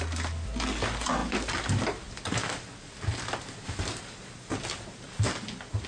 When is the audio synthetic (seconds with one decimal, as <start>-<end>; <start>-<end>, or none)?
none